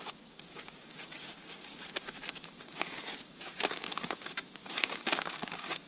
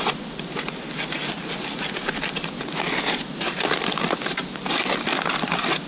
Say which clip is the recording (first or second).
second